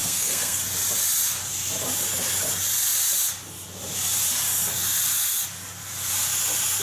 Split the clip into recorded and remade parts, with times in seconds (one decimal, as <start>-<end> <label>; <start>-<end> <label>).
0.0-0.6 remade; 0.6-6.8 recorded